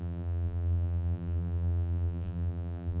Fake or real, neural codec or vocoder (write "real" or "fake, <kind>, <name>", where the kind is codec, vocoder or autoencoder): fake, vocoder, BigVGAN v2